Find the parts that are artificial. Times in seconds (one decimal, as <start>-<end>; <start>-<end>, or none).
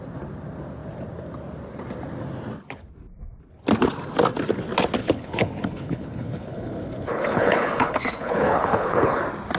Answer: 5.0-9.2